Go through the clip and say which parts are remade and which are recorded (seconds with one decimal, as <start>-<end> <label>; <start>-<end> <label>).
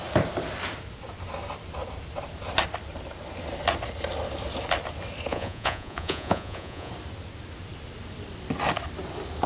0.0-5.3 recorded; 5.3-6.9 remade; 6.9-9.5 recorded